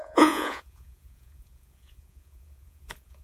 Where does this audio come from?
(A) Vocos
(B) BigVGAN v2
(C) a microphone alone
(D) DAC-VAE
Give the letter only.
A